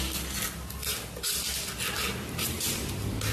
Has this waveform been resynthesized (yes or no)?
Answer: no